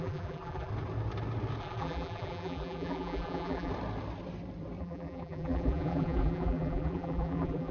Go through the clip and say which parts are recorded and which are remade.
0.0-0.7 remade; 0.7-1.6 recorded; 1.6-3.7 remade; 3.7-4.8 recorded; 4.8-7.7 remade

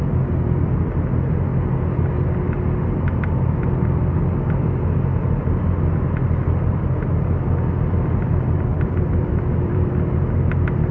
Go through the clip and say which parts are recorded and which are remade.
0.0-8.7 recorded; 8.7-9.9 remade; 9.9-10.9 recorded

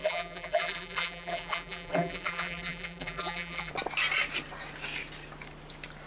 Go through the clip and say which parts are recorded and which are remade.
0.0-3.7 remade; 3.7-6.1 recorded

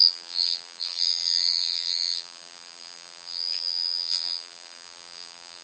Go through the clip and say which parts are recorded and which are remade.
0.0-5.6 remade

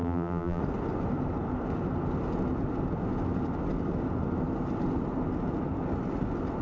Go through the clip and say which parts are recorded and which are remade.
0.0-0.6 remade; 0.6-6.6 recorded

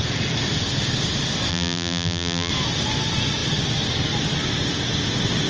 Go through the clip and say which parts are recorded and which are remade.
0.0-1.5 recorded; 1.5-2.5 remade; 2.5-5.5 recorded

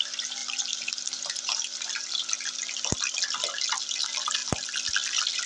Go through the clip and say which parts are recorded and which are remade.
0.0-0.4 recorded; 0.4-2.1 remade; 2.1-5.5 recorded